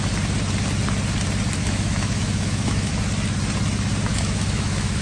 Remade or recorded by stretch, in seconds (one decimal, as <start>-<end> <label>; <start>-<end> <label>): 0.0-1.6 recorded; 1.6-2.9 remade; 2.9-4.1 recorded; 4.1-5.0 remade